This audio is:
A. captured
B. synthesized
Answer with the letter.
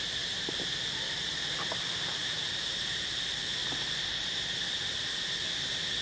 A